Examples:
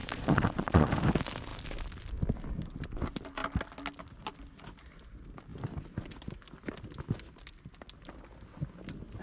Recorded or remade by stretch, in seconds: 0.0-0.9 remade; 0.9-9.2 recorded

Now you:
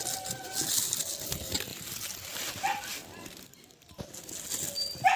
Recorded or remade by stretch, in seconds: 0.0-1.7 recorded; 1.7-2.5 remade; 2.5-3.0 recorded; 3.0-3.9 remade; 3.9-5.2 recorded

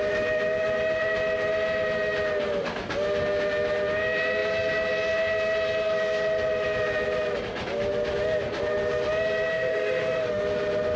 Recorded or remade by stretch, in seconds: 0.0-9.5 recorded; 9.5-10.4 remade; 10.4-11.0 recorded

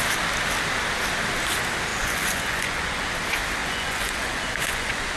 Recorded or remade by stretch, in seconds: 0.0-1.9 recorded; 1.9-3.1 remade; 3.1-3.6 recorded; 3.6-5.2 remade

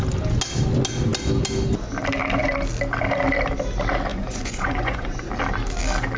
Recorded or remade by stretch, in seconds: 0.0-4.1 recorded; 4.1-5.3 remade; 5.3-6.2 recorded

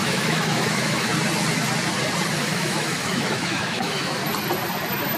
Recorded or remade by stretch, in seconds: 0.0-1.1 remade; 1.1-2.4 recorded; 2.4-4.2 remade; 4.2-5.2 recorded